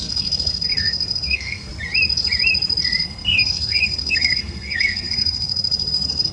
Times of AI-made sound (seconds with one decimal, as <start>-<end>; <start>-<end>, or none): 0.0-1.7; 3.0-6.3